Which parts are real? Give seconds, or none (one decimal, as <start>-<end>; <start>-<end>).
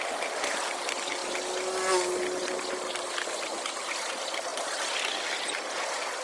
0.0-6.2